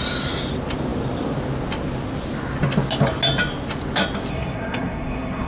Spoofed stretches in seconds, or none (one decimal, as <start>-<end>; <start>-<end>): 4.3-5.5